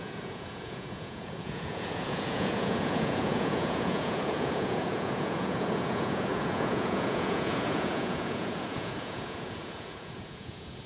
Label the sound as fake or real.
fake